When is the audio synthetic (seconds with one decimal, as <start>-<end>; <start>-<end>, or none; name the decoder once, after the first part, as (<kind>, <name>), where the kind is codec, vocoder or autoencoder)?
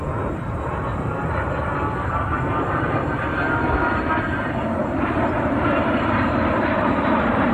0.0-7.5 (vocoder, BigVGAN v2)